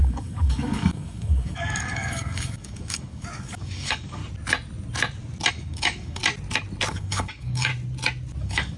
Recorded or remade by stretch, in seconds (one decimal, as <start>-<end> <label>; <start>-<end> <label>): 0.0-4.2 remade; 4.2-5.5 recorded; 5.5-6.2 remade; 6.2-6.9 recorded; 6.9-7.7 remade; 7.7-8.4 recorded; 8.4-8.8 remade